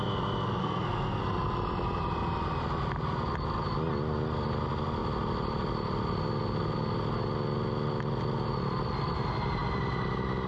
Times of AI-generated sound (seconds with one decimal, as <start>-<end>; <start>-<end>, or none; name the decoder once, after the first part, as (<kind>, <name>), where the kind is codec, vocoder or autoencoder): 0.6-1.2 (codec, SNAC)

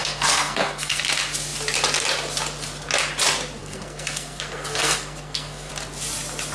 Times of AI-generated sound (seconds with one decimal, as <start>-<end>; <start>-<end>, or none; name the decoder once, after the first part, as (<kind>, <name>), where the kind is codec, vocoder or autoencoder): 0.0-1.0 (codec, SNAC); 3.6-5.7

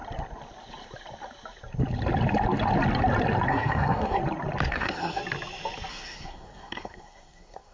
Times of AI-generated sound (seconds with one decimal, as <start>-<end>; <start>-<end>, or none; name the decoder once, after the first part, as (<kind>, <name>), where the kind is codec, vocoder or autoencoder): 3.5-4.2 (codec, SNAC); 4.7-5.2; 5.9-7.7

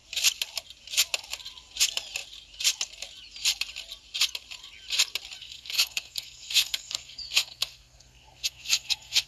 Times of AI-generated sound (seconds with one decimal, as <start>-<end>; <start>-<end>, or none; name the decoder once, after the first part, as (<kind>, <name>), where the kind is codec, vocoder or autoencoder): 5.4-9.3 (codec, SNAC)

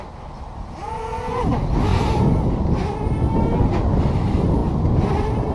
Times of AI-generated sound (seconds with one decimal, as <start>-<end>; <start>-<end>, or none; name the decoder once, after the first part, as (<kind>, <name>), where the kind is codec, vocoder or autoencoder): none

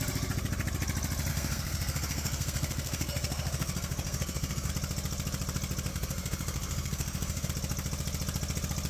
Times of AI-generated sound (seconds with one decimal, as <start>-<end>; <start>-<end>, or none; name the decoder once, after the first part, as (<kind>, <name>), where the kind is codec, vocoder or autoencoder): 1.3-4.7 (codec, SNAC); 5.9-7.5

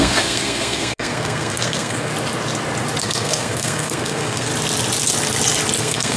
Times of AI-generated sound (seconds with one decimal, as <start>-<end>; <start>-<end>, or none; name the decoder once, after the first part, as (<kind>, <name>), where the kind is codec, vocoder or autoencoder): 0.0-2.1 (codec, SNAC); 3.0-4.5; 5.8-6.2

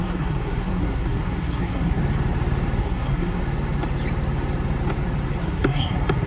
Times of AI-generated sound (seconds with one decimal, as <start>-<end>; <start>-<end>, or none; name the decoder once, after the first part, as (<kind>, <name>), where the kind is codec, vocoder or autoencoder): 0.0-2.0 (codec, SNAC); 2.8-3.4; 5.4-6.3